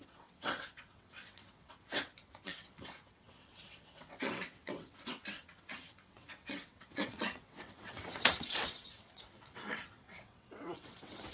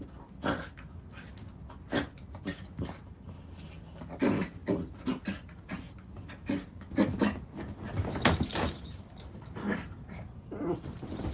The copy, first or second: first